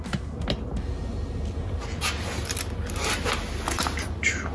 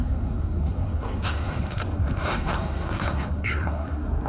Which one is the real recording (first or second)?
first